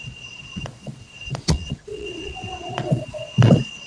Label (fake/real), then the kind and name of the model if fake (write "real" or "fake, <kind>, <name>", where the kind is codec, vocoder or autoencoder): fake, vocoder, Vocos